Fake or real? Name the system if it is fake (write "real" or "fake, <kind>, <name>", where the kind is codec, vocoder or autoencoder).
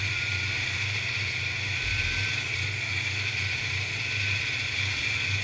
real